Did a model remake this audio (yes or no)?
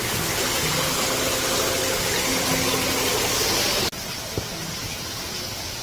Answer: no